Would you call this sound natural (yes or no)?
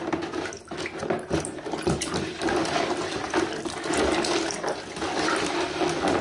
yes